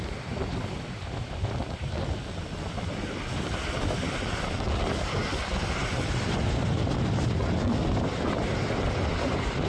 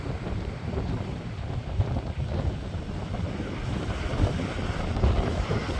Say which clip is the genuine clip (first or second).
first